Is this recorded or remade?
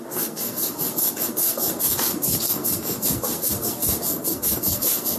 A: remade